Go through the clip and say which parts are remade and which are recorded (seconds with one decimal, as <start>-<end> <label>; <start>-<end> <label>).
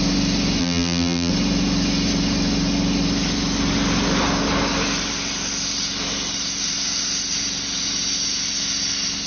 0.0-0.6 recorded; 0.6-1.3 remade; 1.3-9.3 recorded